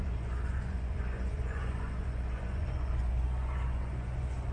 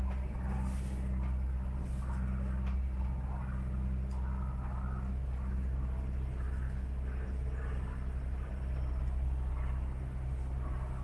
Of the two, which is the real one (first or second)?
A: second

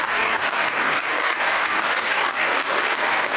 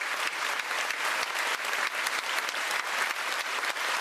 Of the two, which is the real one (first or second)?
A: second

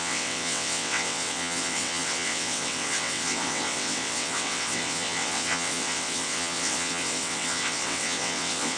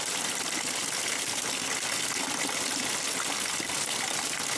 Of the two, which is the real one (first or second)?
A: second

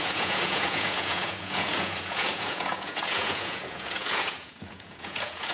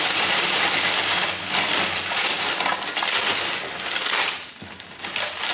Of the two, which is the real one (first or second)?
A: second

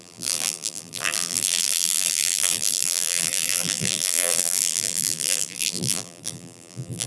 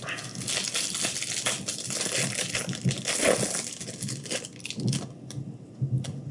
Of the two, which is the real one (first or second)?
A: second